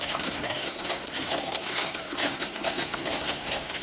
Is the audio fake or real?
fake